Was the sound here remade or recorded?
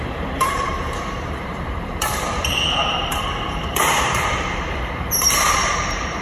remade